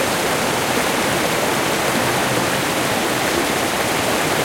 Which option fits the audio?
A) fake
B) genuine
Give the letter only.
A